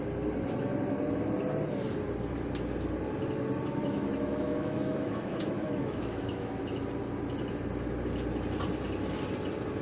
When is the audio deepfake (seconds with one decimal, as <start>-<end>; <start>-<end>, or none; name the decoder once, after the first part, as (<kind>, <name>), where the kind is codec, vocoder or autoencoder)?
3.8-6.6 (autoencoder, DAC-VAE)